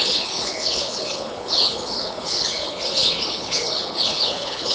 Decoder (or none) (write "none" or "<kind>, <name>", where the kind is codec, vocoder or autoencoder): codec, HILCodec